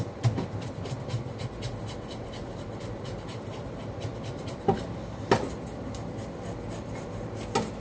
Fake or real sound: real